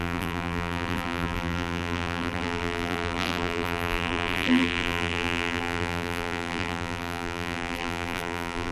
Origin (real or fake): fake